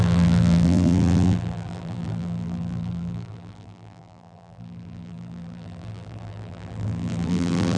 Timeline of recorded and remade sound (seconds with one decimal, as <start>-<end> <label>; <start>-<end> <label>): 0.0-7.8 remade